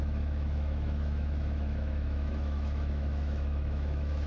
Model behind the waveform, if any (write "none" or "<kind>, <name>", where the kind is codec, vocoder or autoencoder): autoencoder, DAC-VAE